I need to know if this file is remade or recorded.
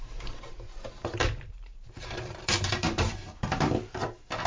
remade